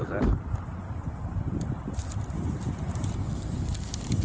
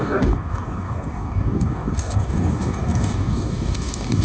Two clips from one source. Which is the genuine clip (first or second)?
first